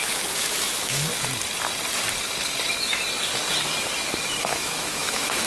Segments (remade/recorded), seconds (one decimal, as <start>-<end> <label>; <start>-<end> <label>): 0.0-1.1 remade; 1.1-4.4 recorded; 4.4-5.5 remade